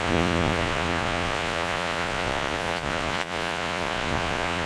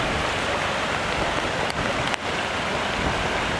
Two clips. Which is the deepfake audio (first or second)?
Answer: first